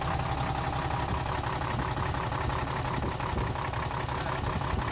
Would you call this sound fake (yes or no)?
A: no